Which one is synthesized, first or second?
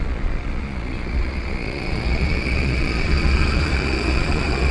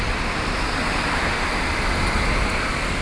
first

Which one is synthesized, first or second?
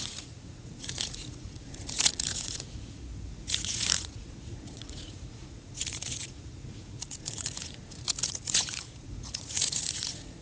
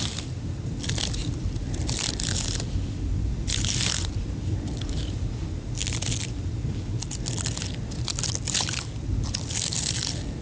first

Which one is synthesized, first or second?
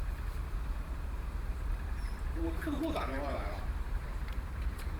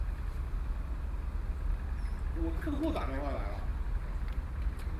first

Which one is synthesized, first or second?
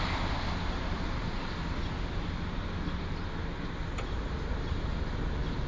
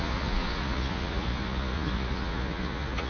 second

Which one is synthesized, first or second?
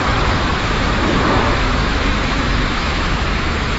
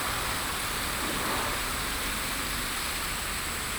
first